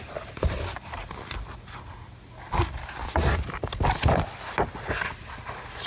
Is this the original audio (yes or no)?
yes